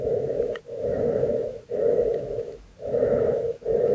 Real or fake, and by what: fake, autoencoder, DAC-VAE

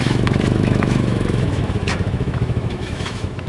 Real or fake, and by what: fake, autoencoder, DAC-VAE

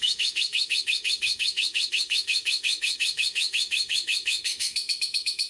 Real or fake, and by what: fake, autoencoder, DAC-VAE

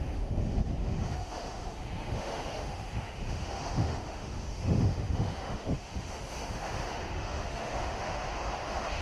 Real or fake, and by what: fake, autoencoder, DAC-VAE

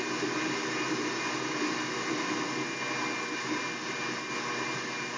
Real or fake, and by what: real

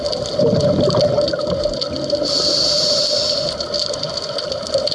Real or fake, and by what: real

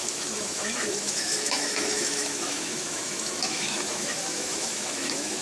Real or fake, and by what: fake, autoencoder, DAC-VAE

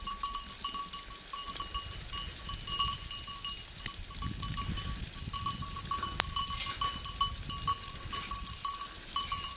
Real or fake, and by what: real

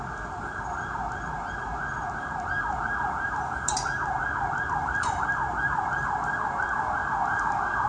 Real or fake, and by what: real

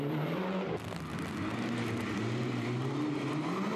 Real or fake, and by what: real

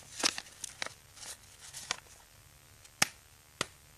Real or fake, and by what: real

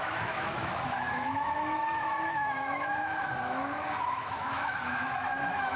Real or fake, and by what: fake, autoencoder, DAC-VAE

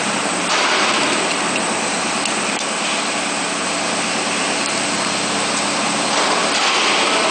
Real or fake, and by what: real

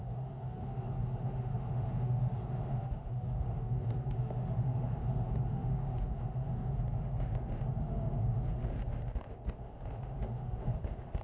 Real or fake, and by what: fake, autoencoder, DAC-VAE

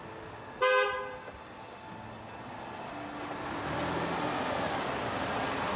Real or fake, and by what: real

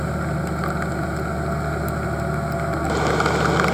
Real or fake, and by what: real